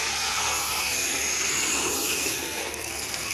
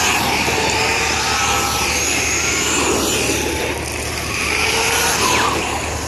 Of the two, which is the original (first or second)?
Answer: second